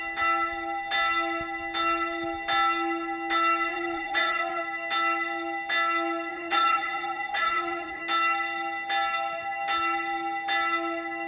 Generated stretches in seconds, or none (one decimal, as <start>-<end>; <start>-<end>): 3.7-4.6; 6.3-8.0

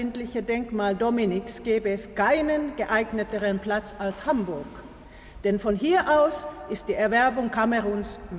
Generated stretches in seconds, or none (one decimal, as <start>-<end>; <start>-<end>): 4.7-5.7

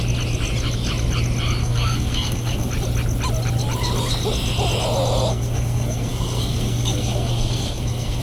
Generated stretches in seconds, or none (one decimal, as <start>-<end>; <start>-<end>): 1.6-2.7; 5.3-8.2

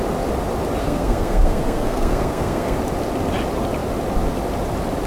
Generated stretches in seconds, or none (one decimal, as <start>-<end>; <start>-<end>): 0.8-2.8

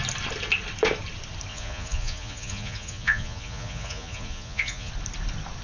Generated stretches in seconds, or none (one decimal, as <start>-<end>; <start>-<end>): 1.5-4.9